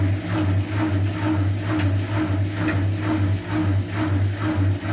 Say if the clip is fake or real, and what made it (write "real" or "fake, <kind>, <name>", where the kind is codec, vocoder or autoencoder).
real